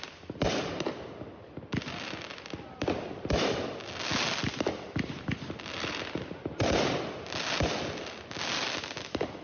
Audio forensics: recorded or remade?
recorded